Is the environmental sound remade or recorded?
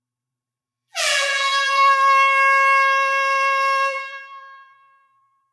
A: remade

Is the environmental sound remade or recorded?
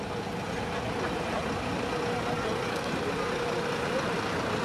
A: recorded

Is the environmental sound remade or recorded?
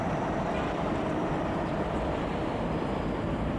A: remade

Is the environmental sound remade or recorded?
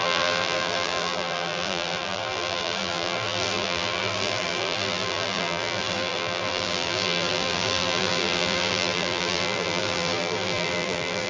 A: remade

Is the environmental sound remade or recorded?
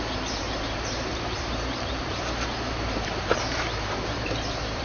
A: remade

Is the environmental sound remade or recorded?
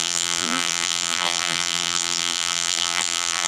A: remade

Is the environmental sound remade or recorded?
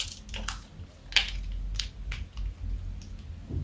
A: recorded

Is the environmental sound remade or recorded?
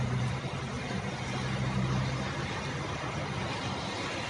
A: recorded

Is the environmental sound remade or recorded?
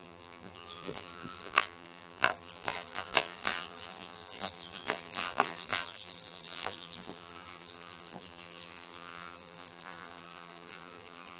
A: remade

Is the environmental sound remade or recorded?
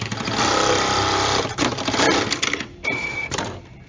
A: remade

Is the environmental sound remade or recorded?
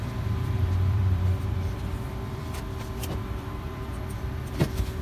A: remade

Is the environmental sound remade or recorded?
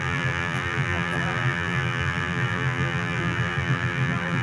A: remade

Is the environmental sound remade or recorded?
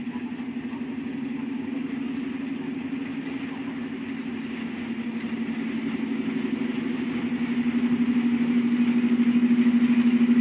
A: recorded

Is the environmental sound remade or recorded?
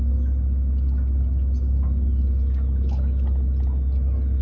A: recorded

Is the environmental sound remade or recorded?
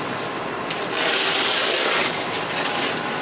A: remade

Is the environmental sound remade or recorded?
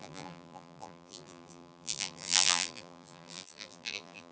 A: remade